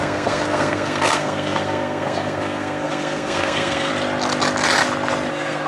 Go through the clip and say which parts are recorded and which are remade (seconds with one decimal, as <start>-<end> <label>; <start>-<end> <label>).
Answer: 0.0-3.9 remade; 3.9-5.3 recorded; 5.3-5.7 remade

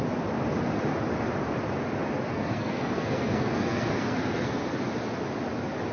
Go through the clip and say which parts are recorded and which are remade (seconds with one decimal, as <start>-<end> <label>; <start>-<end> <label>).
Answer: 0.0-2.3 recorded; 2.3-4.7 remade; 4.7-5.9 recorded